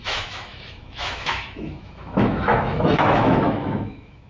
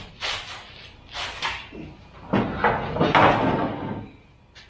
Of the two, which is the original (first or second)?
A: second